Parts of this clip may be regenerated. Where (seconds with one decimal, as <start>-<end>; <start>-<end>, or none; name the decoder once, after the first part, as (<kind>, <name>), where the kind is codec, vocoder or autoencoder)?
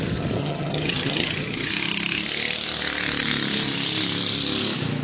0.4-1.7 (vocoder, HiFi-GAN)